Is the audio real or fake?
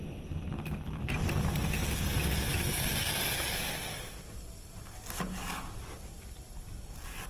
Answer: real